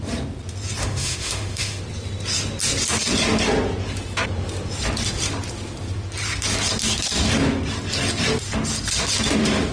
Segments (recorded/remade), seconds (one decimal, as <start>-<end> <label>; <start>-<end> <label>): 0.0-0.8 recorded; 0.8-1.8 remade; 1.8-9.7 recorded